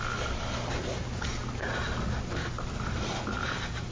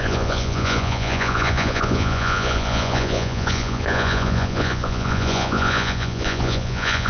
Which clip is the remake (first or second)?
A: second